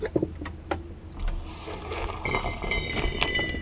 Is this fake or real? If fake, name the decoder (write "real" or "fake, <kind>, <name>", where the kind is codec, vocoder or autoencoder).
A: real